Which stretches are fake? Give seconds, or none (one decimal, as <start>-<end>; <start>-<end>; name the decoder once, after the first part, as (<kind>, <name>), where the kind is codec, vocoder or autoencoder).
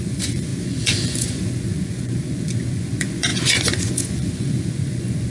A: 0.0-5.3 (vocoder, Vocos)